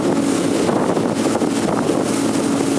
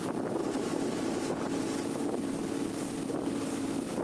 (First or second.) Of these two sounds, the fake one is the second